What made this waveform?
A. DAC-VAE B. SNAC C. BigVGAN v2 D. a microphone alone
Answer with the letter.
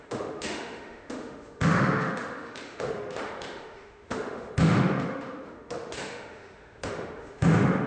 A